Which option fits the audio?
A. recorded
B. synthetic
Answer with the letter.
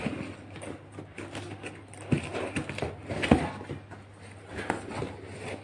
A